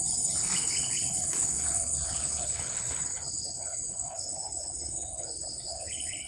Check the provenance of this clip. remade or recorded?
remade